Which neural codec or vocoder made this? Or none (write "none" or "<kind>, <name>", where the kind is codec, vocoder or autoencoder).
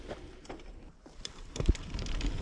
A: vocoder, BigVGAN v2